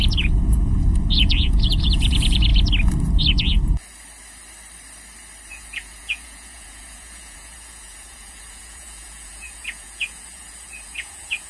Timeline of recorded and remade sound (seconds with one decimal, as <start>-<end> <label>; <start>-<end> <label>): 0.0-2.5 remade; 2.5-5.5 recorded; 5.5-11.5 remade